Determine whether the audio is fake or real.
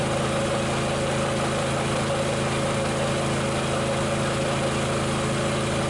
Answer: real